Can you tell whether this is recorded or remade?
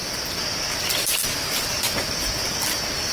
recorded